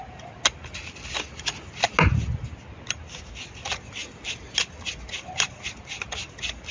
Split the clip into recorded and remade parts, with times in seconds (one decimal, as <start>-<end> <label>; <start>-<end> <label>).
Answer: 0.0-6.7 recorded